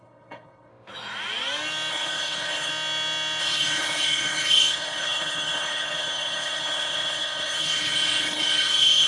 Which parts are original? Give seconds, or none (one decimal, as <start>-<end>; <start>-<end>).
0.7-1.9; 2.7-3.4